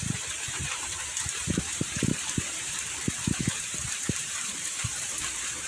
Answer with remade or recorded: remade